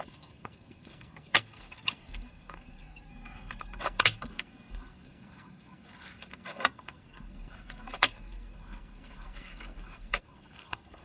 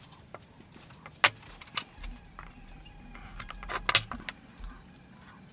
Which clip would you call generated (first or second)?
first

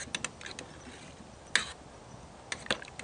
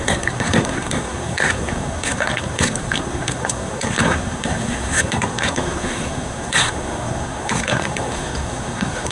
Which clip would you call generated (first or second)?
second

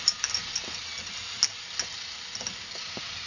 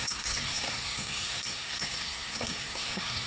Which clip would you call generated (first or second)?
second